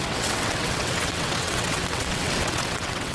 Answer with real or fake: fake